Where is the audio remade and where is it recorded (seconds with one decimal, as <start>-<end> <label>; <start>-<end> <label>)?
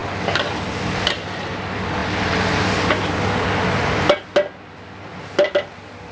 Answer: 0.0-6.1 recorded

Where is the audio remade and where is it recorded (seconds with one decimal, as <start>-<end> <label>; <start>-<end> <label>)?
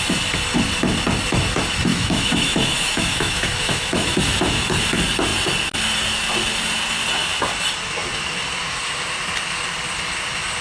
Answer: 0.0-1.9 recorded; 1.9-4.2 remade; 4.2-10.6 recorded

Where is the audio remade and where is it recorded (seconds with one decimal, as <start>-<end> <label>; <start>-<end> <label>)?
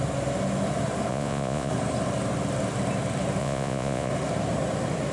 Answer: 0.0-1.1 recorded; 1.1-1.7 remade; 1.7-3.4 recorded; 3.4-4.1 remade; 4.1-5.1 recorded